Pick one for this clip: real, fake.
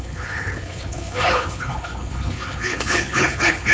fake